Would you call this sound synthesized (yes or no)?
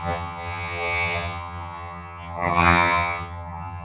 yes